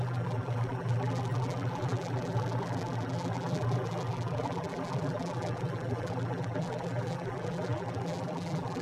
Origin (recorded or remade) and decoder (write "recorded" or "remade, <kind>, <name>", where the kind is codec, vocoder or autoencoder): remade, vocoder, BigVGAN v2